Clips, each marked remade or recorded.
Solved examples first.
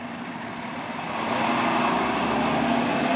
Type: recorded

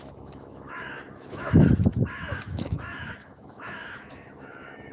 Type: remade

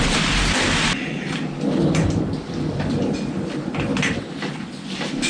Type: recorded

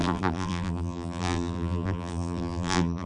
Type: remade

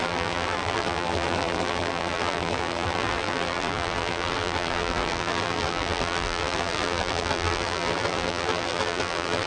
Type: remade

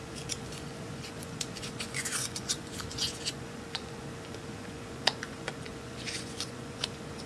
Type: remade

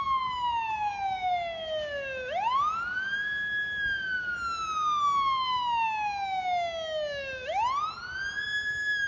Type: recorded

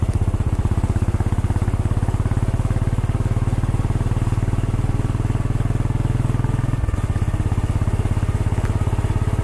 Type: recorded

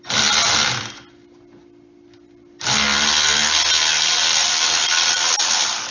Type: recorded